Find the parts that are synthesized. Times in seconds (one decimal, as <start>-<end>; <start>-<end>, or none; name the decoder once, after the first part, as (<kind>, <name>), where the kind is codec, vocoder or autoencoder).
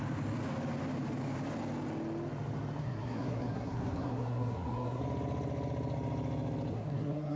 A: 2.8-5.0 (codec, SNAC); 6.7-7.4